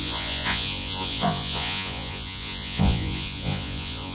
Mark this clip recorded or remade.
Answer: remade